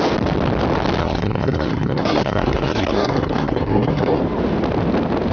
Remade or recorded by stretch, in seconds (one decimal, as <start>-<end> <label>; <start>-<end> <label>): 0.0-1.0 recorded; 1.0-4.2 remade; 4.2-5.3 recorded

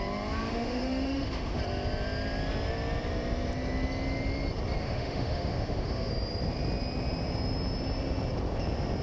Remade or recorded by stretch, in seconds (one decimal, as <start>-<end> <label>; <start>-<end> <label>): 0.0-0.5 recorded; 0.5-1.6 remade; 1.6-4.8 recorded; 4.8-6.1 remade; 6.1-9.0 recorded

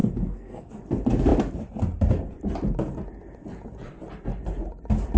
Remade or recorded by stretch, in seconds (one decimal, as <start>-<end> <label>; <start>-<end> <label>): 0.0-0.7 remade; 0.7-5.2 recorded

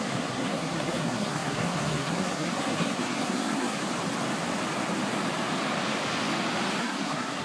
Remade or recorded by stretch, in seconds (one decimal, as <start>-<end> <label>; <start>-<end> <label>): 0.0-3.8 remade; 3.8-6.8 recorded; 6.8-7.4 remade

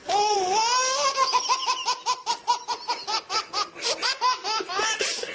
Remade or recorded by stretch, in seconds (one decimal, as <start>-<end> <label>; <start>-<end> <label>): 0.0-5.3 recorded

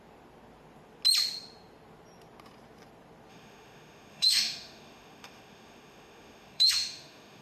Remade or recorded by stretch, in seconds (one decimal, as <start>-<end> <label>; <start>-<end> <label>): 0.0-3.3 recorded; 3.3-7.4 remade

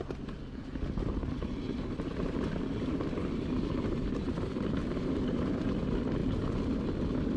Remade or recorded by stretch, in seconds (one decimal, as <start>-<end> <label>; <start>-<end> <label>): 0.0-7.4 recorded

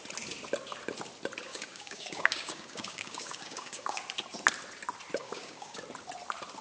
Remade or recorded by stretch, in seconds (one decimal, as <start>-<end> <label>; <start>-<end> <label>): 0.0-1.5 recorded; 1.5-4.0 remade; 4.0-5.2 recorded; 5.2-5.8 remade; 5.8-6.6 recorded